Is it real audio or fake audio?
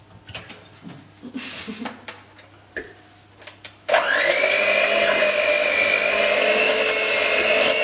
real